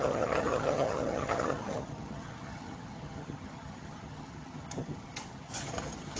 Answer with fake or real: fake